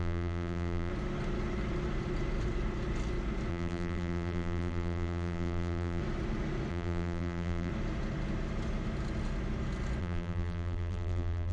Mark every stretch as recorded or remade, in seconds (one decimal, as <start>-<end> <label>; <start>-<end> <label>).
0.0-0.9 remade; 0.9-3.5 recorded; 3.5-6.0 remade; 6.0-6.7 recorded; 6.7-7.7 remade; 7.7-10.0 recorded; 10.0-11.5 remade